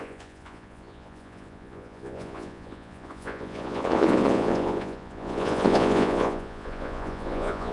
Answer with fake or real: fake